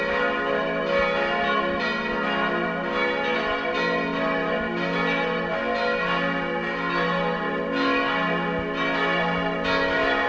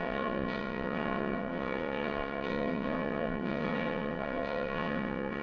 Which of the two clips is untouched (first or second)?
first